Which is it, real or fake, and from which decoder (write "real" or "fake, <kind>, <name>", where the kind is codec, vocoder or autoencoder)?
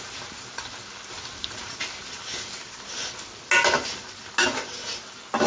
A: real